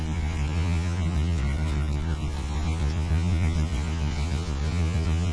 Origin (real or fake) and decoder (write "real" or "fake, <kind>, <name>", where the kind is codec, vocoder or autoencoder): fake, vocoder, Vocos